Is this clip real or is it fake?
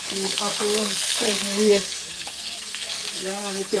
fake